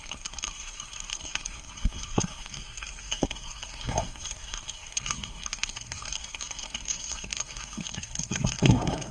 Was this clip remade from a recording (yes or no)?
yes